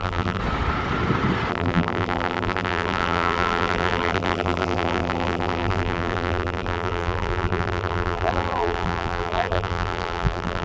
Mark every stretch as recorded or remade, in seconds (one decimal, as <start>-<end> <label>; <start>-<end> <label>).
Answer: 0.0-0.4 remade; 0.4-1.5 recorded; 1.5-10.6 remade